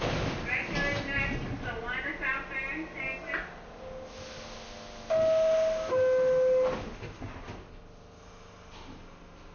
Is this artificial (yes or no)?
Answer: no